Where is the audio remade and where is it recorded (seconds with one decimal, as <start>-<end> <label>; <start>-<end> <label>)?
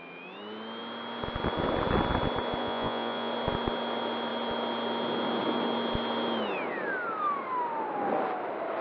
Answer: 0.0-2.6 recorded; 2.6-3.3 remade; 3.3-8.8 recorded